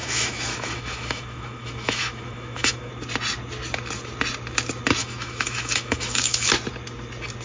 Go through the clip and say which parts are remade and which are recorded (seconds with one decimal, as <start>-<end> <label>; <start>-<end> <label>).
0.0-2.9 remade; 2.9-5.0 recorded; 5.0-6.5 remade; 6.5-7.4 recorded